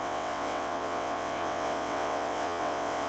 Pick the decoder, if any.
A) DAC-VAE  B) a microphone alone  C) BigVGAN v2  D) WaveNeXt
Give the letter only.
D